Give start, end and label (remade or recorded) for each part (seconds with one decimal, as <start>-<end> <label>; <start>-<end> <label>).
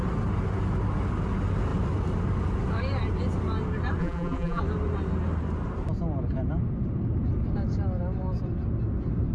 0.0-4.0 recorded; 4.0-4.6 remade; 4.6-9.3 recorded